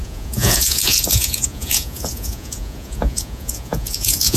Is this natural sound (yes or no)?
no